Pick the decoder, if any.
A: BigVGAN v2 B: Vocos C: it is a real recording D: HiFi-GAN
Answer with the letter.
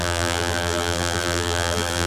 A